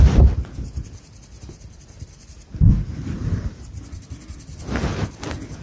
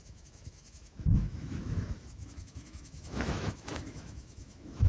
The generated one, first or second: second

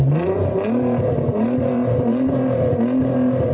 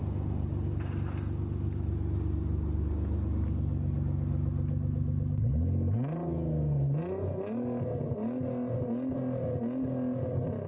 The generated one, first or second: first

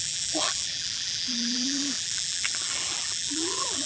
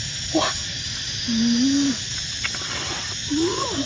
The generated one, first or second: first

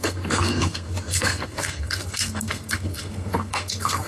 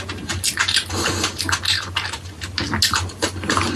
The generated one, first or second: first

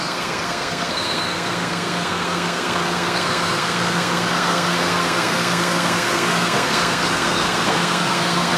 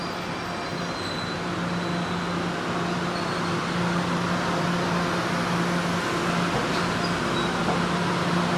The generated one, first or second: first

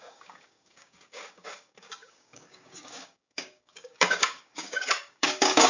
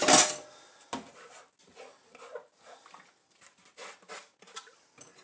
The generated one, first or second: first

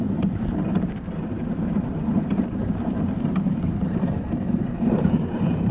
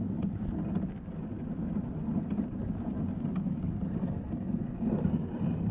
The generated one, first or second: first